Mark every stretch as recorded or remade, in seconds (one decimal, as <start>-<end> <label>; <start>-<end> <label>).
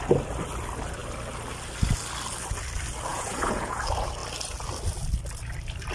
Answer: 0.0-3.1 recorded; 3.1-3.8 remade; 3.8-5.9 recorded